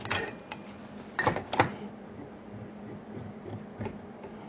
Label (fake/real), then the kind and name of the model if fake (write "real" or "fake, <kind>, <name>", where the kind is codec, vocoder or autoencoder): real